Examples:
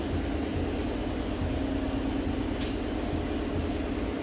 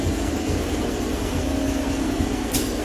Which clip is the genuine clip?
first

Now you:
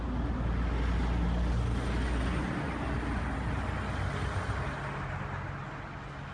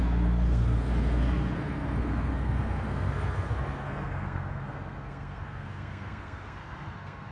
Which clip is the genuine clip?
first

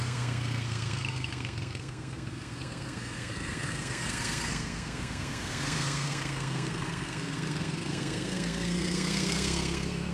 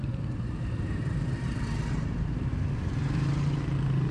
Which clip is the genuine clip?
second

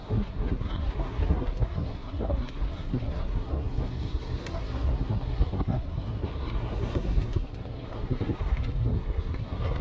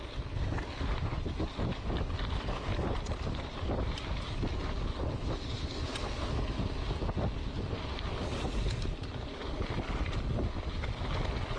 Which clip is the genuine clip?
second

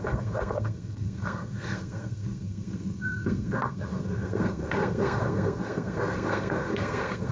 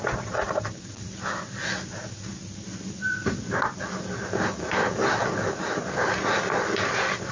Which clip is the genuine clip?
second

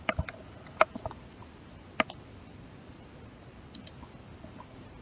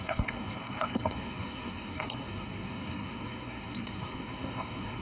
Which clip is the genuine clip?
first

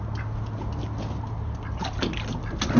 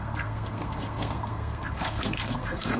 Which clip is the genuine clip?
first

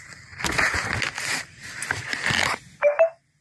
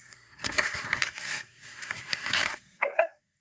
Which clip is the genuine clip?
first